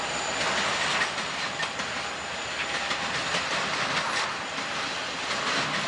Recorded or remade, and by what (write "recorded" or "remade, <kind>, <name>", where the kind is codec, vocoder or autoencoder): recorded